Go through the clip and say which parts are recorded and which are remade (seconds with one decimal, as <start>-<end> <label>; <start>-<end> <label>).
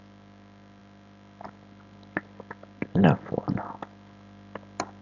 0.0-5.0 recorded